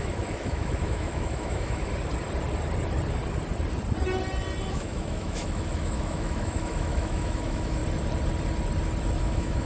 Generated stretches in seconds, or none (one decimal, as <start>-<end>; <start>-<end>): 0.0-1.9; 4.7-7.8; 9.2-9.7

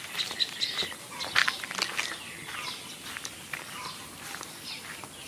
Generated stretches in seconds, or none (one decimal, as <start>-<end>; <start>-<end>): none

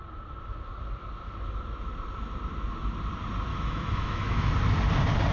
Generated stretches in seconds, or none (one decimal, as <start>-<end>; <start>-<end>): 3.5-4.5

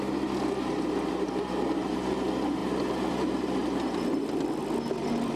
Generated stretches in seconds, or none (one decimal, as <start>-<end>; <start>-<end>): none